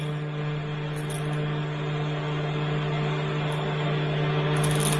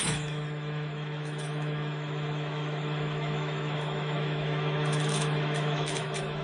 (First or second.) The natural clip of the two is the first